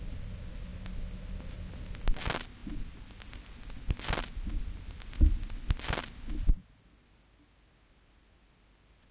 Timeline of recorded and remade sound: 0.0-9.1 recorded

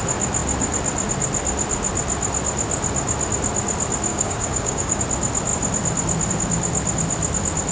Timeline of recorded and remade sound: 0.0-4.1 recorded; 4.1-5.0 remade; 5.0-7.7 recorded

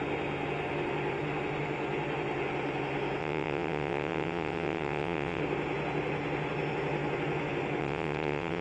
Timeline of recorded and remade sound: 0.0-3.2 recorded; 3.2-5.4 remade; 5.4-7.8 recorded; 7.8-8.6 remade

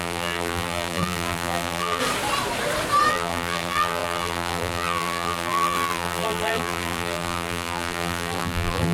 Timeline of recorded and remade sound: 0.0-2.0 remade; 2.0-3.1 recorded; 3.1-8.9 remade